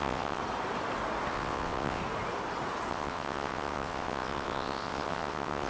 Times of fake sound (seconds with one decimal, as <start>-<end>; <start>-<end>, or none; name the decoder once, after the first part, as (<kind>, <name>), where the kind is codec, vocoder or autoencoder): 0.0-0.4 (vocoder, WaveNeXt); 1.3-2.0; 2.9-5.7